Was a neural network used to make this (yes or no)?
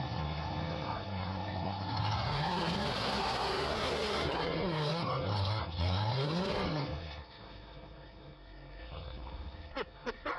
yes